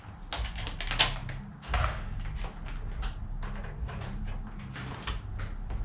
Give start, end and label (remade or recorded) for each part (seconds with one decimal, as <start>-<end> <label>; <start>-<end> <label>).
0.0-5.8 recorded